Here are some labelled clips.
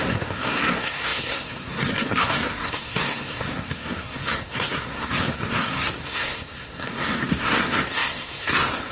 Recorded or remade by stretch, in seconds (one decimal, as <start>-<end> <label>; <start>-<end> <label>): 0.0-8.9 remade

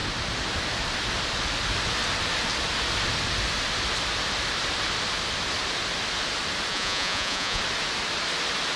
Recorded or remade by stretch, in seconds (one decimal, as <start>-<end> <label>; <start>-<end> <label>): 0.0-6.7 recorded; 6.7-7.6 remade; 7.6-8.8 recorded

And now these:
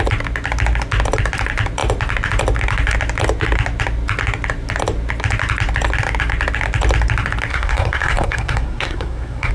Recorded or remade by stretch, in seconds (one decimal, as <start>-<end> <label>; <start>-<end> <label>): 0.0-7.5 recorded; 7.5-9.5 remade

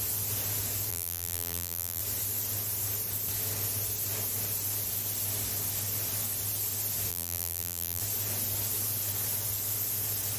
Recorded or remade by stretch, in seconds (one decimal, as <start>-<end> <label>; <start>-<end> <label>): 0.0-0.9 recorded; 0.9-2.0 remade; 2.0-7.1 recorded; 7.1-8.0 remade; 8.0-10.4 recorded

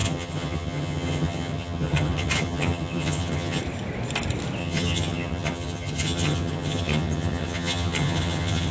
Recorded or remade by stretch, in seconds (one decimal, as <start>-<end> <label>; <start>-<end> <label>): 0.0-3.6 remade; 3.6-4.6 recorded; 4.6-8.7 remade

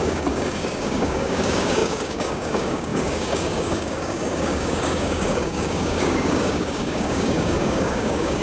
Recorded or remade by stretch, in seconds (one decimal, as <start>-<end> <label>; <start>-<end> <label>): 0.0-8.4 remade